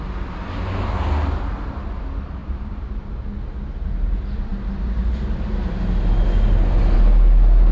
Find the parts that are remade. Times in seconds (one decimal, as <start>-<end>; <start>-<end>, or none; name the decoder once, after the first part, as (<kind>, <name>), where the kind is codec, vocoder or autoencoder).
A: 2.4-3.1 (vocoder, BigVGAN v2)